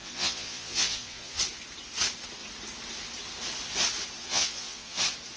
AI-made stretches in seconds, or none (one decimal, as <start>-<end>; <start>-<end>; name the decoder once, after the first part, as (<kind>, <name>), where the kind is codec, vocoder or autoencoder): 0.0-1.4 (vocoder, Vocos); 4.2-5.0